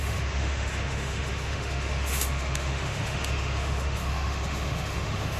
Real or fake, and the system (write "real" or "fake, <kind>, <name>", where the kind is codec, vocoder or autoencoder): fake, autoencoder, DAC-VAE